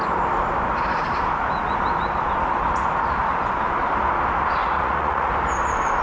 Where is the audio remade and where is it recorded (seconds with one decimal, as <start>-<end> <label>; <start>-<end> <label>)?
0.0-4.6 recorded; 4.6-5.3 remade; 5.3-6.0 recorded